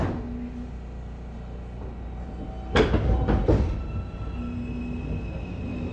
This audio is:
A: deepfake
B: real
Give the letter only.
B